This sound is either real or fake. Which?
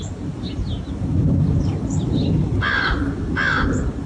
real